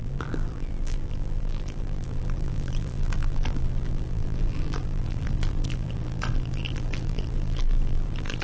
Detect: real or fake fake